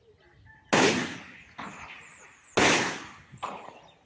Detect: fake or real real